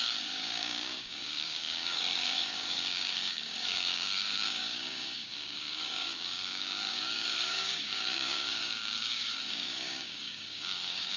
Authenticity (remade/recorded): remade